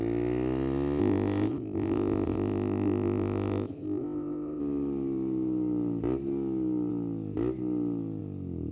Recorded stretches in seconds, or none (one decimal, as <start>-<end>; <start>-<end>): 0.0-1.0; 4.6-8.7